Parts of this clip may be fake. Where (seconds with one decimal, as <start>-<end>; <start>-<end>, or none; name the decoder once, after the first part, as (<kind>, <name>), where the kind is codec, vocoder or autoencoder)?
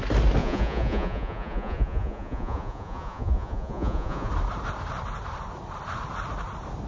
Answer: 0.4-4.3 (vocoder, Vocos)